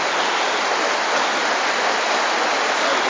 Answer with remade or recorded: recorded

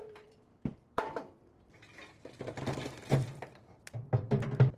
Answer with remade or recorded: remade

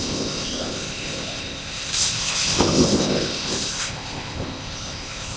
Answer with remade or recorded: remade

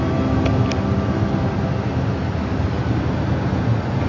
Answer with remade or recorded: recorded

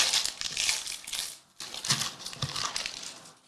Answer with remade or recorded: recorded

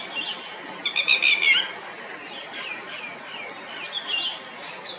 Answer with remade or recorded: recorded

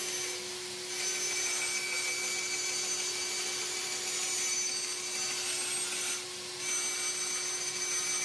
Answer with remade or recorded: recorded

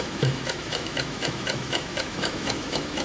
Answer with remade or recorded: remade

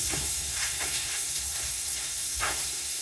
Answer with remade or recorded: remade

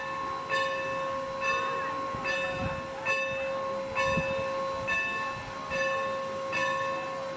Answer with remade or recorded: recorded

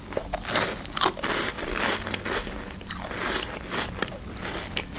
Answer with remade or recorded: recorded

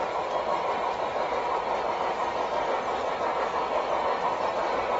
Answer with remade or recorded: recorded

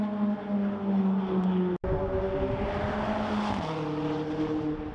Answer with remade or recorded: recorded